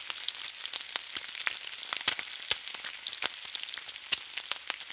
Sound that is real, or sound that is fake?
real